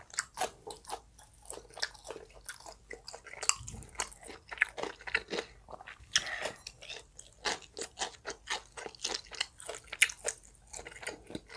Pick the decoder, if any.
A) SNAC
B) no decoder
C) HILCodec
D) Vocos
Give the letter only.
B